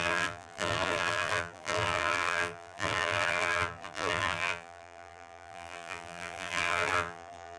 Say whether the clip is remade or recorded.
remade